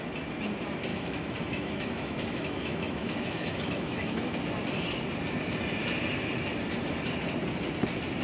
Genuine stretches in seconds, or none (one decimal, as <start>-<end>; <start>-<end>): 0.0-0.9; 4.4-8.2